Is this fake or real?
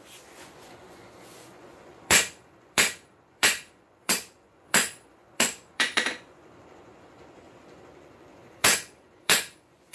fake